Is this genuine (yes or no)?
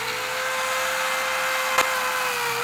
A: yes